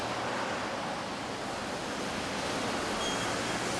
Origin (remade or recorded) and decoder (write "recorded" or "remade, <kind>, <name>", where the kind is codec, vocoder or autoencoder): recorded